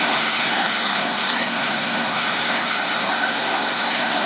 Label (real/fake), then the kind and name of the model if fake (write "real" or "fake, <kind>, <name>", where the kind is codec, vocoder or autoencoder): fake, codec, SNAC